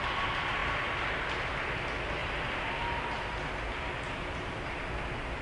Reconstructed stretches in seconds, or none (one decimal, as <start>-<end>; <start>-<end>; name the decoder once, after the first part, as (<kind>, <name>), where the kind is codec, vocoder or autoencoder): none